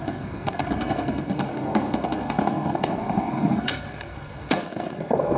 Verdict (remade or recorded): remade